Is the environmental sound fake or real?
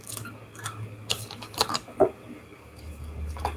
fake